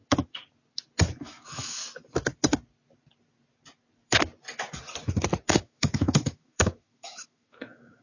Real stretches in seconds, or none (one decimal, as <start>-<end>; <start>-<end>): 0.0-1.2; 1.8-5.5